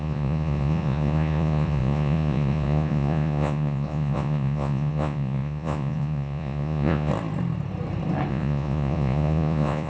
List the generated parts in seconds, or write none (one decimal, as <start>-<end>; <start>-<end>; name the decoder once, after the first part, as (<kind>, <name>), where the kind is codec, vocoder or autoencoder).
0.0-7.1 (vocoder, Vocos); 8.3-9.9